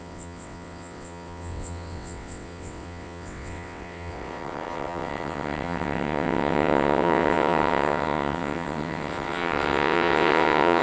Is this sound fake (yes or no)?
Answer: yes